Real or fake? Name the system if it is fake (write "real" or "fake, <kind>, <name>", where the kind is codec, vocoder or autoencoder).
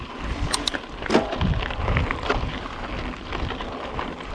real